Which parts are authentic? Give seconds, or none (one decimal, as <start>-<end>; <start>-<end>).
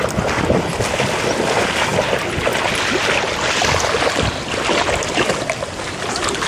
0.0-6.5